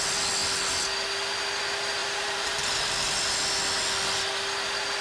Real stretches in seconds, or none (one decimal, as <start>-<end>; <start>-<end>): 0.0-2.0; 3.2-5.0

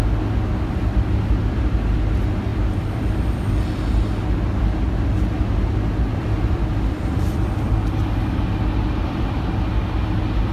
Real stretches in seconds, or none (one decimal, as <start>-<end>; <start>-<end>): 0.0-2.5; 3.7-6.1; 8.2-10.5

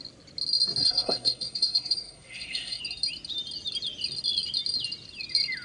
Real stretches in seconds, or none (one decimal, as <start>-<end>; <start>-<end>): 0.0-0.8; 2.8-5.6

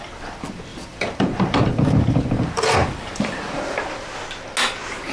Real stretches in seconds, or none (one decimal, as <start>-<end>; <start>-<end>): 0.0-0.7; 3.8-5.1

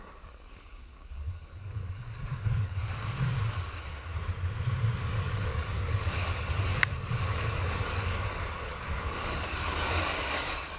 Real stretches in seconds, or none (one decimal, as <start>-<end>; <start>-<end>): 3.0-3.5; 4.1-5.0